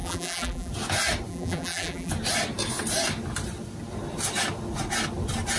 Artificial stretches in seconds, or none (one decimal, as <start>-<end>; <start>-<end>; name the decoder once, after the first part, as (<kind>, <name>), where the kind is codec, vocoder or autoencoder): 0.0-0.7 (vocoder, BigVGAN v2); 1.3-2.1